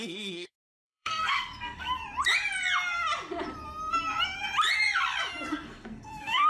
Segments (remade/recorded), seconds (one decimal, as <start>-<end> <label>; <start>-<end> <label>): 0.0-2.0 remade; 2.0-5.5 recorded; 5.5-6.5 remade